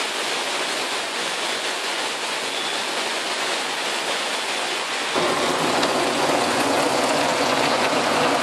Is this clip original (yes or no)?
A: no